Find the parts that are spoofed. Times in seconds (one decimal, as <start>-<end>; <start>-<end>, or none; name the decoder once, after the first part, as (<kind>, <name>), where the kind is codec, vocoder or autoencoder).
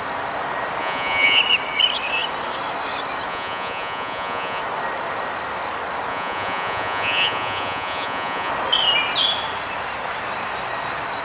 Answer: 0.8-1.4 (vocoder, Vocos); 3.3-4.6; 6.1-8.5